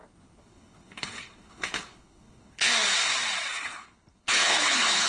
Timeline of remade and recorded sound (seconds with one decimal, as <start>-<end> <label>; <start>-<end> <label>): 0.0-2.7 remade; 2.7-3.5 recorded; 3.5-5.1 remade